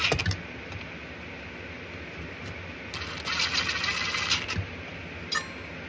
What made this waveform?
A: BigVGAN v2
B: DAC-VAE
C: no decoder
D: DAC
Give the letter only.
C